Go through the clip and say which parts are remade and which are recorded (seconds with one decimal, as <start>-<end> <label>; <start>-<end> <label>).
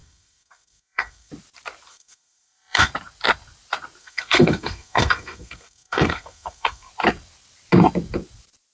0.0-1.3 remade; 1.3-1.9 recorded; 1.9-2.9 remade; 2.9-4.0 recorded; 4.0-6.9 remade; 6.9-8.7 recorded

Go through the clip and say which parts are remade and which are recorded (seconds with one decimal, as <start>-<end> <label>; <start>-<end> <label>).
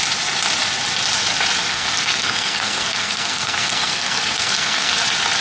0.0-1.7 recorded; 1.7-4.9 remade; 4.9-5.4 recorded